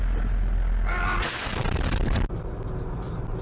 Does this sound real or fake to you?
real